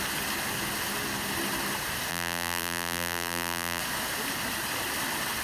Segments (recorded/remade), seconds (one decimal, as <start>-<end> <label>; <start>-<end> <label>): 0.0-2.1 recorded; 2.1-3.8 remade; 3.8-5.4 recorded